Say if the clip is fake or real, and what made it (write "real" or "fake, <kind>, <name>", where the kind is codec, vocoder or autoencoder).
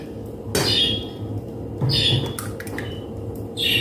real